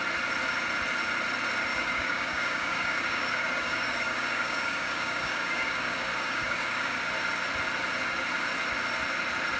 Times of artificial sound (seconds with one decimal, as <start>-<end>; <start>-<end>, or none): 1.7-7.0